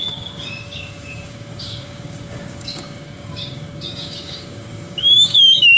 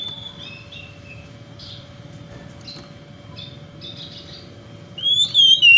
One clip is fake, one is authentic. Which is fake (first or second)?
first